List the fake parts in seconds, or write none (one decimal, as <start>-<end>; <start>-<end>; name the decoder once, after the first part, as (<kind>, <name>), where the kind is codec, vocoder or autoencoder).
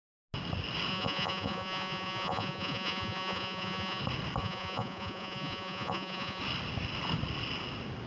0.9-4.0 (vocoder, Vocos); 4.4-6.4